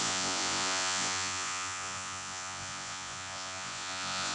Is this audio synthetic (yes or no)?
yes